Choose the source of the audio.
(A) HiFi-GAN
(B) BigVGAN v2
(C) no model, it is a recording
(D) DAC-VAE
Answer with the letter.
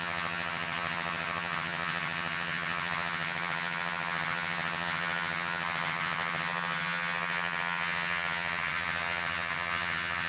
A